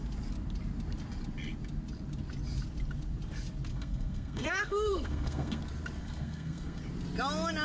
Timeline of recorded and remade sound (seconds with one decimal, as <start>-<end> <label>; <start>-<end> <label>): 0.0-3.7 recorded; 3.7-5.6 remade; 5.6-6.0 recorded; 6.0-6.8 remade; 6.8-7.6 recorded